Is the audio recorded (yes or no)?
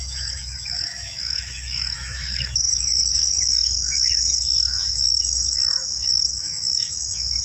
no